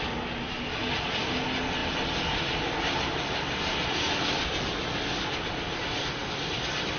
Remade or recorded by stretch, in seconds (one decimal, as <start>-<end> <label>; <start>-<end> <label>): 0.0-7.0 recorded